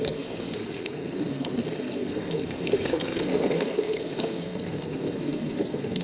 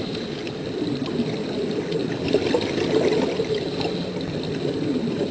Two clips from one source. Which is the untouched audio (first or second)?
second